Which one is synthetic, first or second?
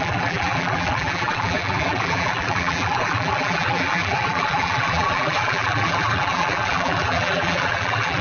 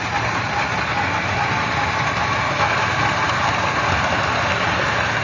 first